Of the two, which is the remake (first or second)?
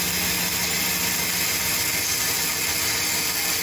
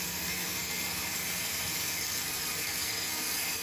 second